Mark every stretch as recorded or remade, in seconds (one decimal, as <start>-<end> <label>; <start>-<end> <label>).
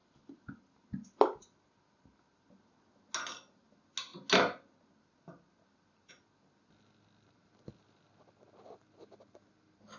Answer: 0.0-10.0 recorded